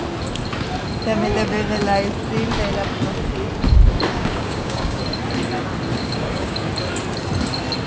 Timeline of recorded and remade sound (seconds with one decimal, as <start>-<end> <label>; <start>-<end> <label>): 0.0-4.1 recorded; 4.1-5.0 remade; 5.0-5.9 recorded; 5.9-6.7 remade; 6.7-7.9 recorded